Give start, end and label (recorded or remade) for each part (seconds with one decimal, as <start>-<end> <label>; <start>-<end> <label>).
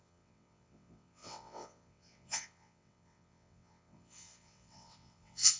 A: 0.0-5.6 remade